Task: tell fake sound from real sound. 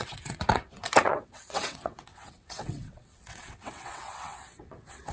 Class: fake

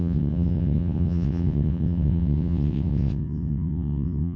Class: fake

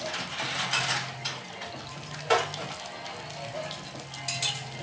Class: real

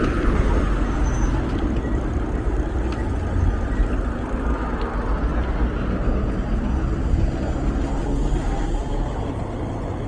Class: real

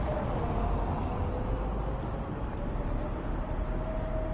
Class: real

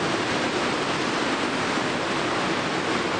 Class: real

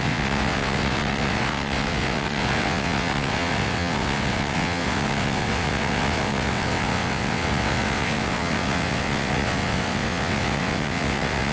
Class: fake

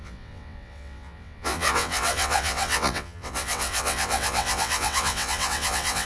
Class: fake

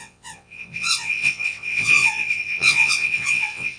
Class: fake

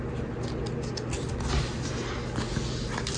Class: real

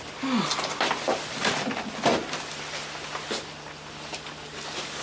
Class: real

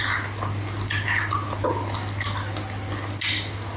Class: real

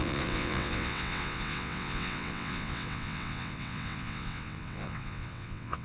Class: fake